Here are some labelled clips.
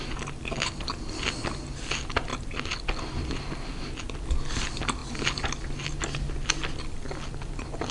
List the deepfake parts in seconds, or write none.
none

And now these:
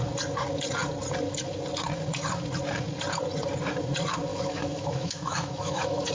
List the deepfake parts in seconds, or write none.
4.3-6.1 (autoencoder, DAC-VAE)

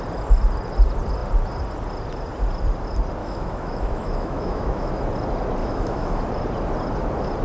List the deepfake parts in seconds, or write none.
3.2-4.9 (autoencoder, DAC-VAE); 5.6-6.2

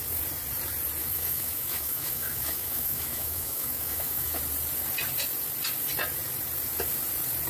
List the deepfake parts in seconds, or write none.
1.0-4.4 (autoencoder, DAC-VAE)

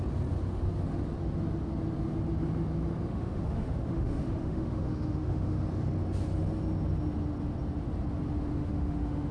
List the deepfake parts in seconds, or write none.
3.1-5.6 (autoencoder, DAC-VAE); 8.6-9.3

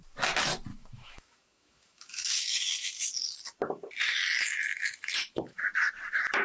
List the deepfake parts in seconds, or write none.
0.7-3.1 (autoencoder, DAC-VAE); 4.7-5.6

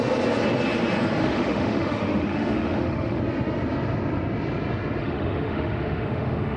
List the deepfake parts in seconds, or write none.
1.2-3.2 (autoencoder, DAC-VAE); 5.0-6.6